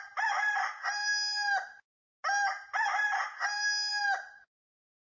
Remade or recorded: recorded